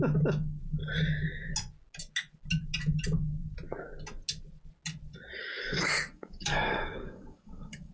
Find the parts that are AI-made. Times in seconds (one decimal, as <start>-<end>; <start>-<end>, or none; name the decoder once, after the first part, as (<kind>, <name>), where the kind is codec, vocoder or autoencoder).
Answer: 5.4-7.9 (codec, DAC)